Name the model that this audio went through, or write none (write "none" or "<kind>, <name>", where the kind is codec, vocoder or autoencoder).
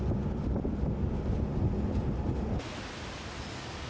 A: none